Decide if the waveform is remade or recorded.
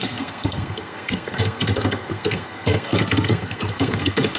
remade